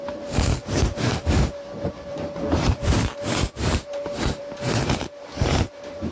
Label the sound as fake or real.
fake